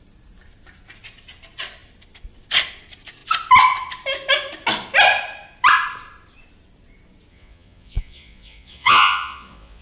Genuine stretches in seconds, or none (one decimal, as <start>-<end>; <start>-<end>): 0.0-7.3